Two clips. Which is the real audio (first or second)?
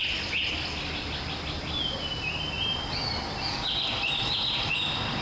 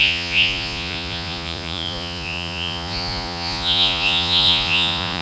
first